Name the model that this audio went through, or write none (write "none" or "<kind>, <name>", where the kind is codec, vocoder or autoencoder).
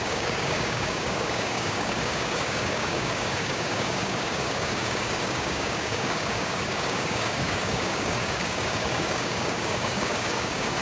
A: codec, DAC